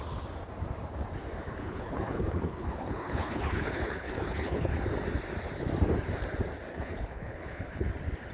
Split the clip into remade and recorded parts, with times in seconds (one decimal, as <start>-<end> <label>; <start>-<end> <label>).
0.0-1.6 recorded; 1.6-4.7 remade; 4.7-6.7 recorded; 6.7-7.9 remade; 7.9-8.3 recorded